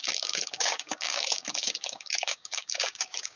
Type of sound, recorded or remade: remade